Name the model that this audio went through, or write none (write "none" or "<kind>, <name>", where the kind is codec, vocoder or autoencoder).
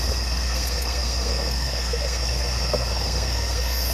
codec, SNAC